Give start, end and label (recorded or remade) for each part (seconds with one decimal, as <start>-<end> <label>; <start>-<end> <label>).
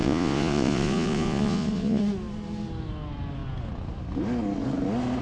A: 0.0-2.0 remade; 2.0-5.2 recorded